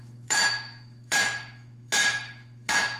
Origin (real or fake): fake